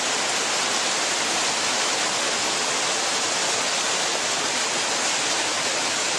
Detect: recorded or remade recorded